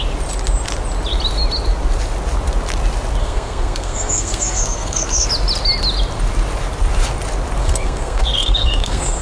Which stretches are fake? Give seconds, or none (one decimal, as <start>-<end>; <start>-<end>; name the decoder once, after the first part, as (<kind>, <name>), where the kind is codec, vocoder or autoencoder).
3.2-5.3 (codec, SNAC); 7.6-9.2